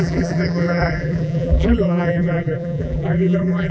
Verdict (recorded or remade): remade